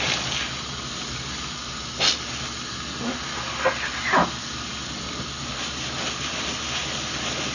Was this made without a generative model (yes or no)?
yes